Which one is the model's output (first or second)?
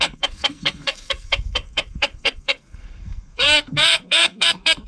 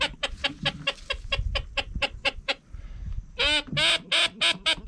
first